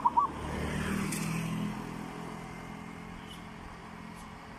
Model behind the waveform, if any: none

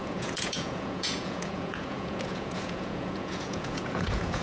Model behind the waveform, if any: vocoder, Vocos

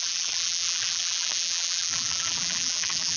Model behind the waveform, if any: vocoder, BigVGAN v2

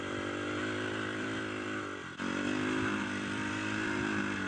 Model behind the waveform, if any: vocoder, BigVGAN v2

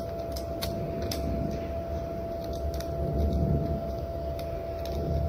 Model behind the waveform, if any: none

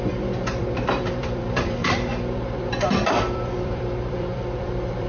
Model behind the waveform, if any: vocoder, BigVGAN v2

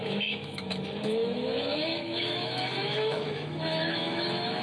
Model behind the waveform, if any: autoencoder, DAC-VAE